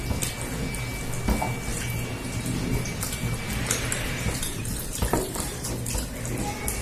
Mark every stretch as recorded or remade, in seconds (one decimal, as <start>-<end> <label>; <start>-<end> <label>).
0.0-1.7 recorded; 1.7-5.7 remade; 5.7-6.8 recorded